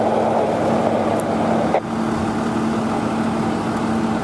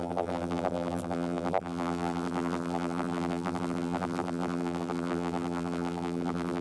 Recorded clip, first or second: first